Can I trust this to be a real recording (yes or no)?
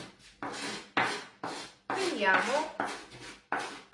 yes